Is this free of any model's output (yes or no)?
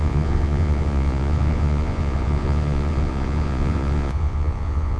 no